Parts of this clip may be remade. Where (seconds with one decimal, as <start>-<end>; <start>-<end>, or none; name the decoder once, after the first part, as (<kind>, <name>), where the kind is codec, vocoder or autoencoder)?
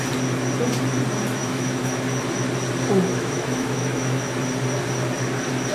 1.4-2.0 (autoencoder, DAC-VAE); 3.1-4.2